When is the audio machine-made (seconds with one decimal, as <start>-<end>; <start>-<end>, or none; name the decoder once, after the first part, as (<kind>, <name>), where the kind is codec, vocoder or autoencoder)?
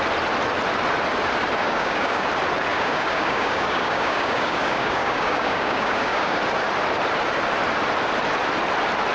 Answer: 1.6-2.3 (codec, DAC); 2.7-6.4